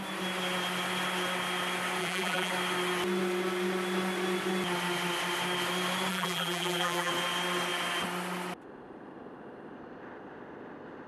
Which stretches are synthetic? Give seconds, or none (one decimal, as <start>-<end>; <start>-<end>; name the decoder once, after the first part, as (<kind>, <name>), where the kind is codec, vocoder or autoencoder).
2.0-2.5 (vocoder, BigVGAN v2); 6.1-7.1